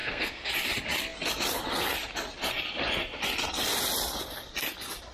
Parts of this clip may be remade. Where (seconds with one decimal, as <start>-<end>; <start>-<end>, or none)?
0.0-0.5